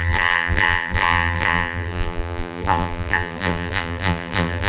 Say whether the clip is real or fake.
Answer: fake